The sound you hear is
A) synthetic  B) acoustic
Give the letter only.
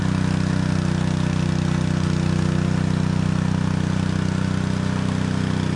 B